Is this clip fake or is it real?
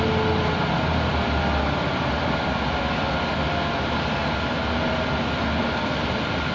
real